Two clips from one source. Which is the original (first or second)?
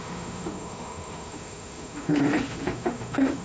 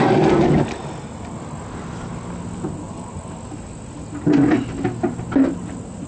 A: second